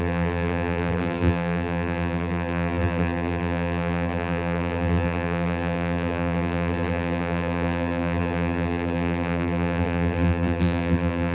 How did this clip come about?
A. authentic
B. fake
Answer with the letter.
B